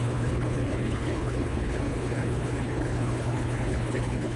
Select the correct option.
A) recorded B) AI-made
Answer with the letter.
B